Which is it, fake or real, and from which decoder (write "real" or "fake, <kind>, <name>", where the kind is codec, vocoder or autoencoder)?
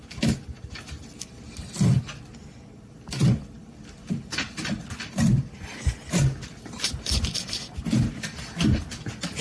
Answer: real